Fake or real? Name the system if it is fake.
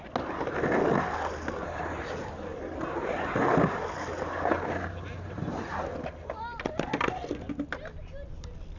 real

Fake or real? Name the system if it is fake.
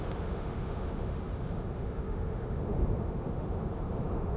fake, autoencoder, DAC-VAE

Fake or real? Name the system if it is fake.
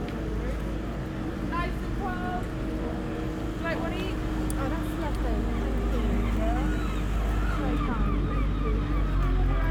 real